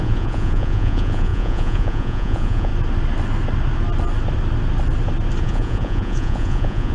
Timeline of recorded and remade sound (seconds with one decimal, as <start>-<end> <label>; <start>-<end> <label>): 0.0-2.7 remade; 2.7-5.4 recorded; 5.4-6.9 remade